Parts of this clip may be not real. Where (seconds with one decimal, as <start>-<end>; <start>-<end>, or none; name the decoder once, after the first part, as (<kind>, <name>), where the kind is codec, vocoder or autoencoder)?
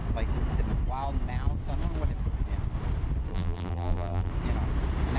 3.3-4.3 (vocoder, BigVGAN v2)